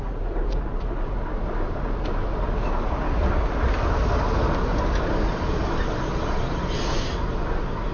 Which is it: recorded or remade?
recorded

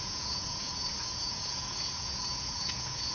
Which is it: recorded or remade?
remade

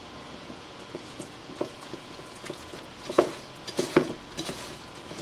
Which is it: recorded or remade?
remade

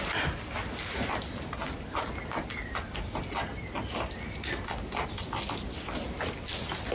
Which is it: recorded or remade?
recorded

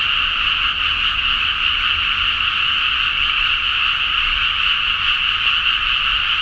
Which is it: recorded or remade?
recorded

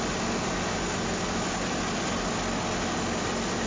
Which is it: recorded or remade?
recorded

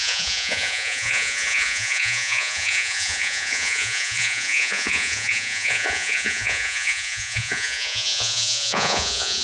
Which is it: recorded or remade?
remade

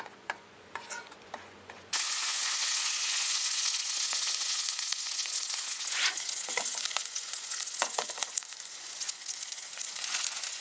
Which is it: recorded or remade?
remade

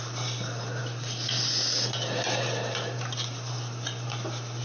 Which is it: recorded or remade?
recorded